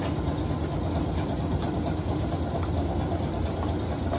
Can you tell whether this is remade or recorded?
recorded